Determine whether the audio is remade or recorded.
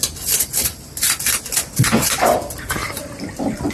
remade